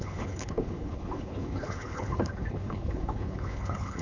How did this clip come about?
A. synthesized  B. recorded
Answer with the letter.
A